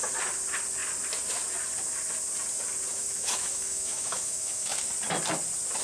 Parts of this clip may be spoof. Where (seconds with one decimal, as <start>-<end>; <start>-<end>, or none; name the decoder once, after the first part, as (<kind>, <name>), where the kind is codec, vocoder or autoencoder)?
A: 2.9-4.9 (autoencoder, DAC-VAE)